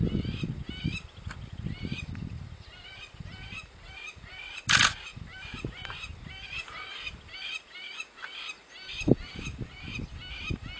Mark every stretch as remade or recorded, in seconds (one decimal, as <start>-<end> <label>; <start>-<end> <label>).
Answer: 0.0-10.8 recorded